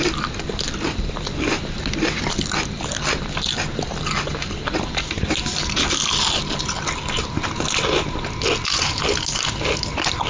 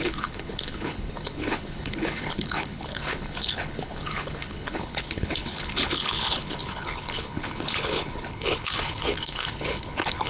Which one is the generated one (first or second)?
second